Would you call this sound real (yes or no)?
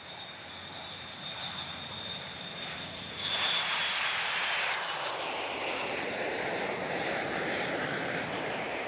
no